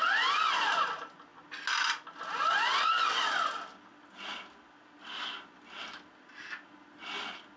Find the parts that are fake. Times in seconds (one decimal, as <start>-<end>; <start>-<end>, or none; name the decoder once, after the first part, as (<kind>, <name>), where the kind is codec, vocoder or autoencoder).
none